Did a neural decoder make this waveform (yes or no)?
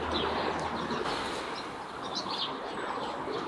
no